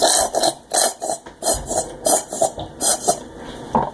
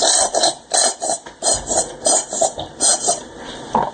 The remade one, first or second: second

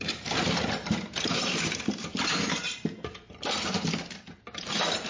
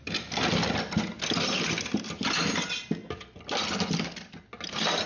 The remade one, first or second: first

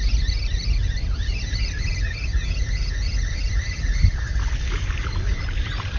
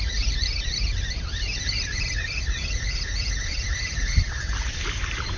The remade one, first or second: second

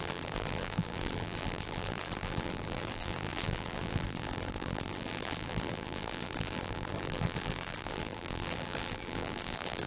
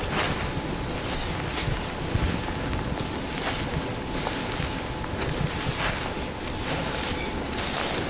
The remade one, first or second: first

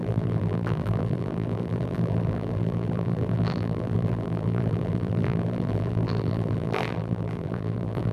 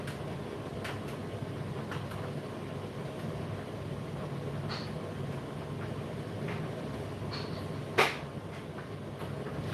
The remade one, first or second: first